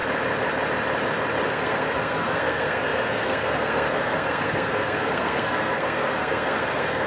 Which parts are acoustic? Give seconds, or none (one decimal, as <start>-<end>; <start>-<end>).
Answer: 0.0-1.5